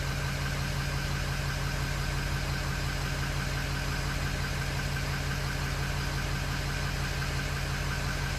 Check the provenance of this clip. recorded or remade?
recorded